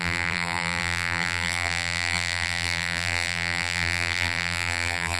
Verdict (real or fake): fake